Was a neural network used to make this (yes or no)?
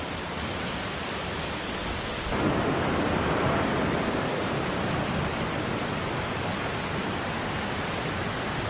no